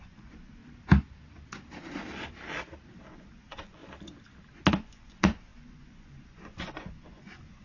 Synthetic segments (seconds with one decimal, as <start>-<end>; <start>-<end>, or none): 0.0-0.6; 3.1-3.8; 4.7-7.6